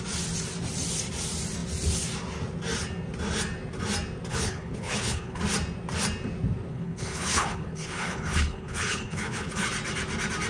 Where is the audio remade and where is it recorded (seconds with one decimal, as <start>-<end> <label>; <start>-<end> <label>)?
0.0-4.3 recorded; 4.3-5.4 remade; 5.4-6.7 recorded; 6.7-9.7 remade; 9.7-10.5 recorded